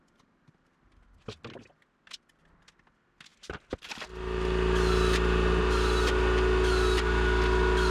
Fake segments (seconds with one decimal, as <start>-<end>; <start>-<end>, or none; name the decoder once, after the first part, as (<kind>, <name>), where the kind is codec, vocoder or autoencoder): none